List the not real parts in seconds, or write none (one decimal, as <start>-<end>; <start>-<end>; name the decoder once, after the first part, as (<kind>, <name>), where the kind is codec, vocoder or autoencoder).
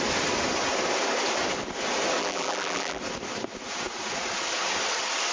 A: 2.2-3.0 (vocoder, BigVGAN v2)